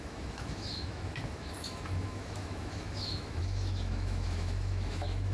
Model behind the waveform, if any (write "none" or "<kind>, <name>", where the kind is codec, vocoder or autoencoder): autoencoder, DAC-VAE